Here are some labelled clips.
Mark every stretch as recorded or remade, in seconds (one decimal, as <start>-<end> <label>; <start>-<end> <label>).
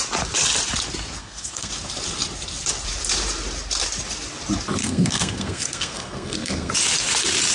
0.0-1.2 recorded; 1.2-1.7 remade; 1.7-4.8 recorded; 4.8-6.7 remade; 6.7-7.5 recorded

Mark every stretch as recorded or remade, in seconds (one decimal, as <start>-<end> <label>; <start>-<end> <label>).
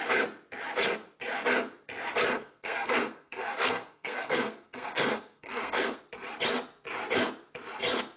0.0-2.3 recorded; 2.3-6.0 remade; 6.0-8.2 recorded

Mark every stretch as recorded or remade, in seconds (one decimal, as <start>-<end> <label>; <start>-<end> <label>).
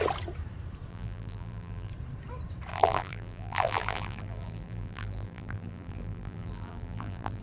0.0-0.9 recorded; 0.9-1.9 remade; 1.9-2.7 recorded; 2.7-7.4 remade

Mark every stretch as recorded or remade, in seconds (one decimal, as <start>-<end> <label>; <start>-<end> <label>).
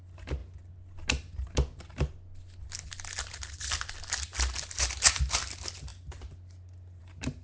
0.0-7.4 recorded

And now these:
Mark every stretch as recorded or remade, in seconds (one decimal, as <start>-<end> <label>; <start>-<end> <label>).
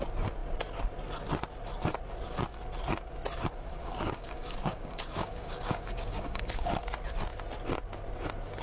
0.0-3.8 recorded; 3.8-6.7 remade; 6.7-8.6 recorded